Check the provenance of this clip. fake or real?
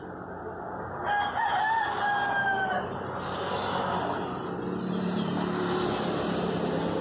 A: real